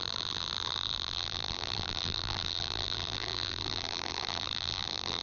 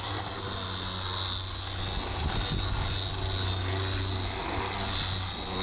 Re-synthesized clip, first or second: first